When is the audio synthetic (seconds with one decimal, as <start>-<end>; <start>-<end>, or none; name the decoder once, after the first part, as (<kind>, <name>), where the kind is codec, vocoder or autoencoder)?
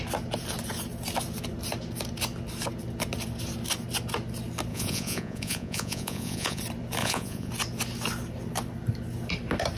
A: 4.7-6.6 (vocoder, Vocos); 7.0-7.5